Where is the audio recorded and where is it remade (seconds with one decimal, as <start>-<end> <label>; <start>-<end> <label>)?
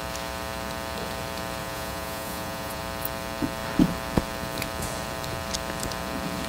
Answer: 0.0-1.6 recorded; 1.6-2.8 remade; 2.8-6.5 recorded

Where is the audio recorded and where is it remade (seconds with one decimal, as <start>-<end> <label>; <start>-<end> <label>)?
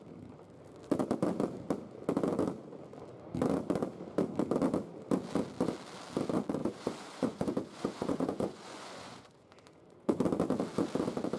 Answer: 0.0-6.6 recorded; 6.6-10.2 remade; 10.2-11.4 recorded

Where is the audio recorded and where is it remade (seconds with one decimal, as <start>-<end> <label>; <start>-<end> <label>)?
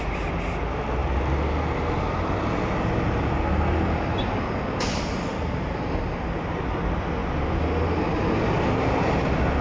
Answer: 0.0-9.6 recorded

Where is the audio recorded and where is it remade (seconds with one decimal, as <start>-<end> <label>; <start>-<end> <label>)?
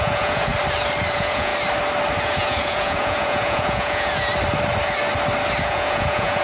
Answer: 0.0-0.5 remade; 0.5-1.1 recorded; 1.1-1.5 remade; 1.5-2.2 recorded; 2.2-4.3 remade; 4.3-5.6 recorded; 5.6-6.4 remade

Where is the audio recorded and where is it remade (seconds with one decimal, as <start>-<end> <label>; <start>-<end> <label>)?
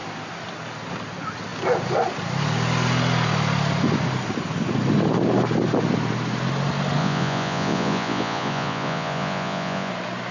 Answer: 0.0-7.0 recorded; 7.0-9.9 remade; 9.9-10.3 recorded